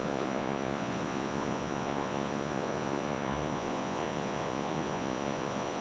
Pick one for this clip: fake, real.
fake